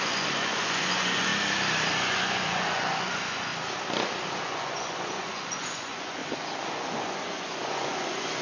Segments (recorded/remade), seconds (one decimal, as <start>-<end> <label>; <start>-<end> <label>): 0.0-1.3 remade; 1.3-1.9 recorded; 1.9-3.5 remade; 3.5-4.4 recorded; 4.4-6.2 remade; 6.2-6.7 recorded; 6.7-8.4 remade